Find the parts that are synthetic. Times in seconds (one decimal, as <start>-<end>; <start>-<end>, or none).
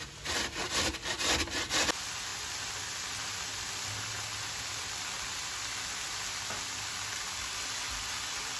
none